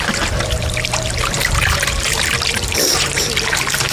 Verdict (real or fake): fake